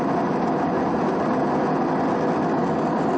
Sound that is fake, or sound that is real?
real